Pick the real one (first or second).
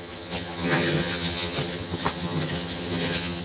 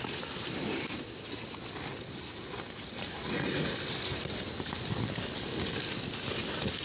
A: second